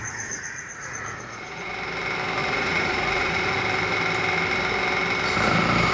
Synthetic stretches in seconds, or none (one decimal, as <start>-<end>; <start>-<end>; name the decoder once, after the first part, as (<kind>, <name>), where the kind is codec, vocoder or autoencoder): 0.0-1.7 (vocoder, Vocos); 2.4-3.6